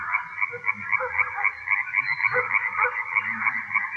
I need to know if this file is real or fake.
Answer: real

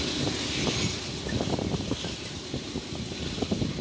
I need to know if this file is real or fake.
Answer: real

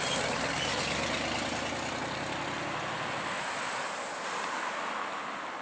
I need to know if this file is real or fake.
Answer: real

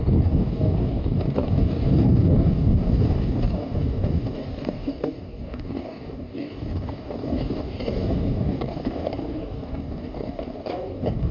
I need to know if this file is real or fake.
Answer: fake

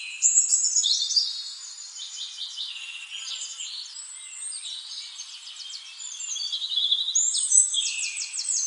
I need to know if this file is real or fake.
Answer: real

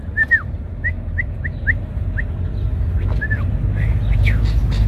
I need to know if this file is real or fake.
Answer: real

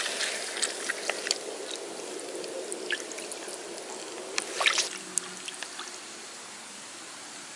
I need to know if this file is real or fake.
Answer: real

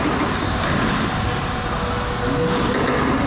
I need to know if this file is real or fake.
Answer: real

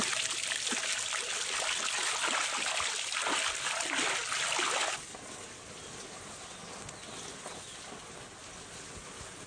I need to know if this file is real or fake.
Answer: real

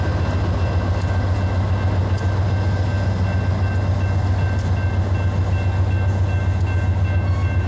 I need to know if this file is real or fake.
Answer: real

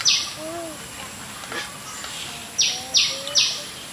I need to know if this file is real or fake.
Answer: real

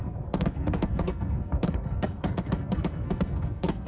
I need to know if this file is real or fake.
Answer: fake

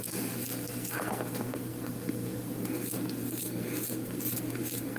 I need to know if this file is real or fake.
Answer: fake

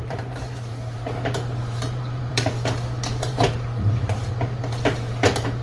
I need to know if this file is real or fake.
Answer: fake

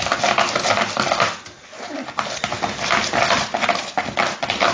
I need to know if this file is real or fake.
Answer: real